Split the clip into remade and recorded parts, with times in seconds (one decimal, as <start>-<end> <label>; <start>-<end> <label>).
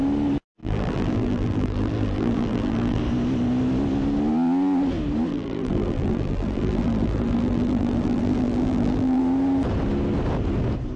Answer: 0.0-0.6 recorded; 0.6-3.0 remade; 3.0-5.3 recorded; 5.3-9.2 remade; 9.2-11.0 recorded